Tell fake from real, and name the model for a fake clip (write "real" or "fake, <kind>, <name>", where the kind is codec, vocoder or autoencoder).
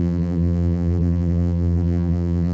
fake, vocoder, BigVGAN v2